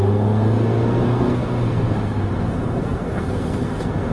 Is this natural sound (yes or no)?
no